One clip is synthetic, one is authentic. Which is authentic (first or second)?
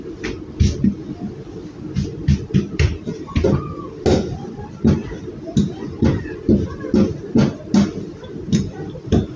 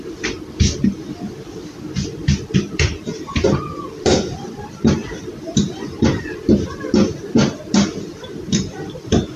first